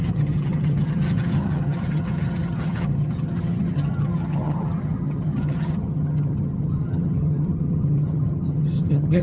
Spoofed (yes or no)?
yes